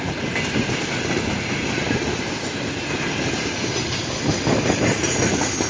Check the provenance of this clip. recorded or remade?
recorded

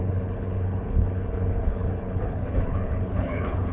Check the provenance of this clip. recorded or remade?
remade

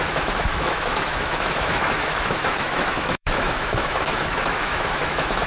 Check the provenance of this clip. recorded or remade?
remade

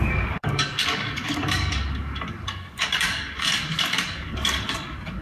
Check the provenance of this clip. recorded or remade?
remade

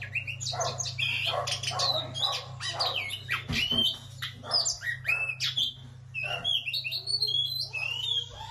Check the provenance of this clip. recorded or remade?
recorded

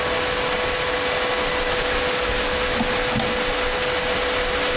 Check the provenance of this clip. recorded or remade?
recorded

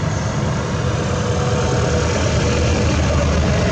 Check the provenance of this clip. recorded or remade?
recorded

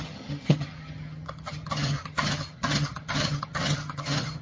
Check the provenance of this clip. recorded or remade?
remade